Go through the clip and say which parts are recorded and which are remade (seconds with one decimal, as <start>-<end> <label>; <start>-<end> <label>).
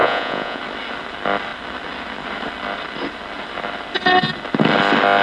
0.0-0.6 remade; 0.6-5.2 recorded